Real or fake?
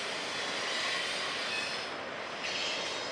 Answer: real